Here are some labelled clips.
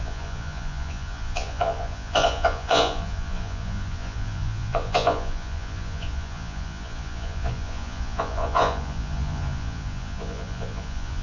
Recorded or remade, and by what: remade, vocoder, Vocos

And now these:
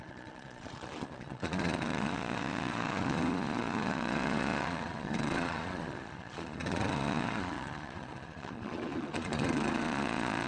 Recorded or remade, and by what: remade, vocoder, Vocos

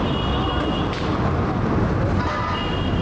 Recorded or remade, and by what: recorded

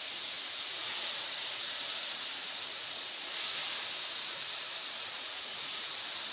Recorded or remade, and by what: remade, vocoder, Vocos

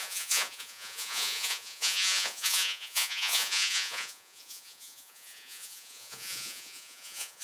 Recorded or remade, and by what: remade, vocoder, Vocos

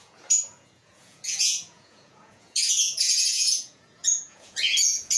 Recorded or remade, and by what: remade, vocoder, Vocos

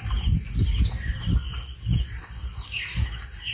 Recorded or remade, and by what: recorded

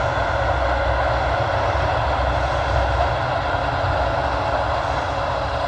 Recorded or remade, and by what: recorded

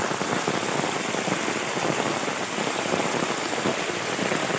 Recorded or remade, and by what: recorded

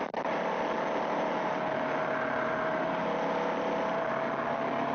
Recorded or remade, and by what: recorded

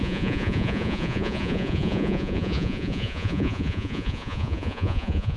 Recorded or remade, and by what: remade, vocoder, Vocos